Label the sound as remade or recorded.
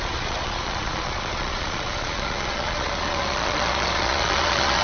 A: remade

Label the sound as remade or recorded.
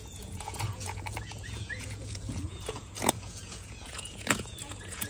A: remade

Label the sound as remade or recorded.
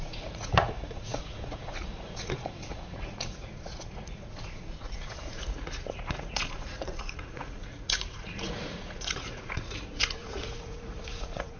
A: remade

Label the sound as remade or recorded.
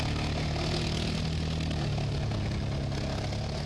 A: recorded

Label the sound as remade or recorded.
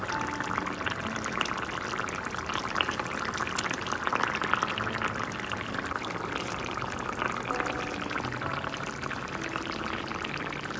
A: recorded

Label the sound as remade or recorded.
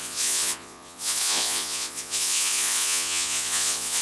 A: remade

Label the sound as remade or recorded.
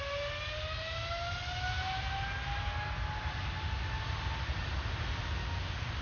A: recorded